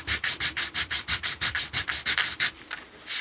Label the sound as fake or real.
real